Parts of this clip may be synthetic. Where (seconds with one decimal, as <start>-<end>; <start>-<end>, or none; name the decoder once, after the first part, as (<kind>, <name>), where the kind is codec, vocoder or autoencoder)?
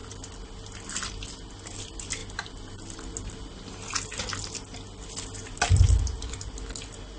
none